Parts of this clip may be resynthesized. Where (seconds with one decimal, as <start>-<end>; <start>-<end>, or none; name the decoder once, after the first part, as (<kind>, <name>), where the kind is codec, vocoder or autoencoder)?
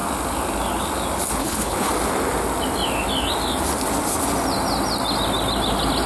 1.4-1.9 (codec, HILCodec)